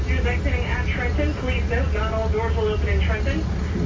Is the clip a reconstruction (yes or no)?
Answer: no